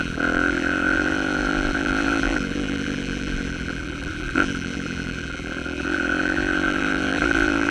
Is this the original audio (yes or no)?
no